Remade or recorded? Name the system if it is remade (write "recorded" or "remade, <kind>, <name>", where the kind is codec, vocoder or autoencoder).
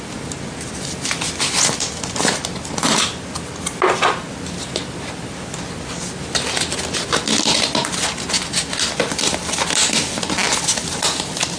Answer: recorded